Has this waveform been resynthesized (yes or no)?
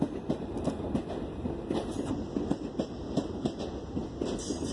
no